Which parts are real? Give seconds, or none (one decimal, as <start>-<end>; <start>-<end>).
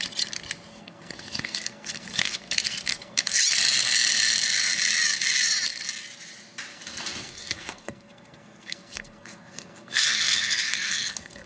0.0-0.7; 3.4-6.7